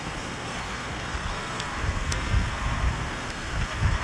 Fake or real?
fake